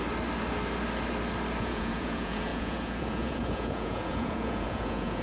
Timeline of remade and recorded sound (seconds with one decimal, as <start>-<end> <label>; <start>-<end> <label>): 0.0-1.6 recorded; 1.6-5.2 remade